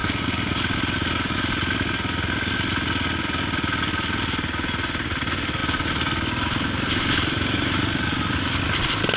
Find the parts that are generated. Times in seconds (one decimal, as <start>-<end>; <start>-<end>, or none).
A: 0.0-0.5